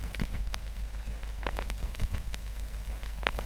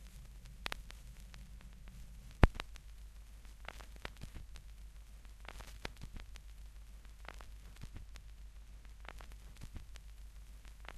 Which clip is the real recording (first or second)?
second